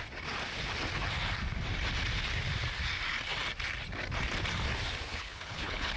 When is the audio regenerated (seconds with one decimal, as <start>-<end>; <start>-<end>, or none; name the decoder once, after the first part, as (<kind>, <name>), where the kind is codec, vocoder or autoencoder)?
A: 5.1-6.0 (codec, HILCodec)